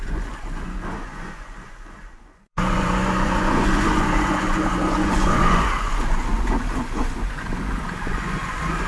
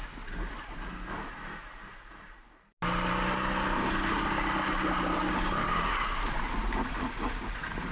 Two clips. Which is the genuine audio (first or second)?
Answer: second